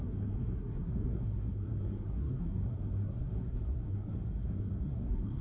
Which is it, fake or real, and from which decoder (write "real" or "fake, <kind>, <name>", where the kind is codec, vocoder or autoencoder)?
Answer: fake, codec, SNAC